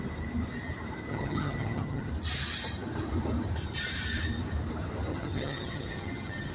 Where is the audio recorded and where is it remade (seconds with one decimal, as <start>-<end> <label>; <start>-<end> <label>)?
0.0-1.1 recorded; 1.1-2.1 remade; 2.1-5.1 recorded; 5.1-6.5 remade